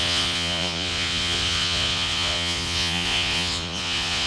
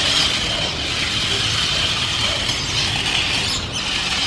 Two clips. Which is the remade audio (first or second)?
first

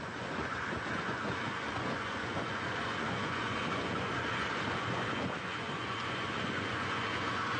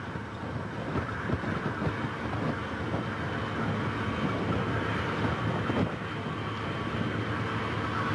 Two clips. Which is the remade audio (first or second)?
first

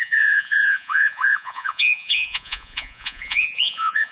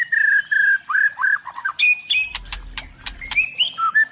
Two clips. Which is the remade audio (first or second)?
first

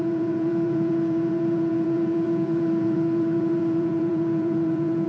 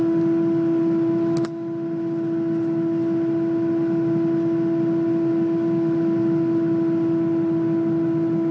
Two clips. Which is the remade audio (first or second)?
first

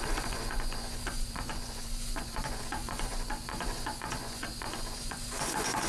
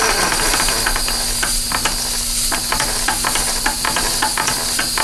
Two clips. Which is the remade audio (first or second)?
first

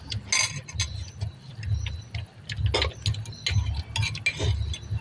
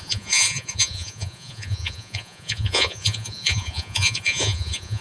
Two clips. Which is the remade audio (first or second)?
second